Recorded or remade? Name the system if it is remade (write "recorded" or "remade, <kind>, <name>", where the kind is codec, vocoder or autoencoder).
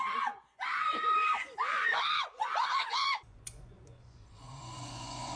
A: remade, vocoder, Vocos